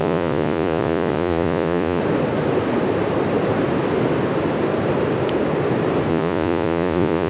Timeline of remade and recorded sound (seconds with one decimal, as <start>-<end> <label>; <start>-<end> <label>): 0.0-2.0 remade; 2.0-6.1 recorded; 6.1-7.3 remade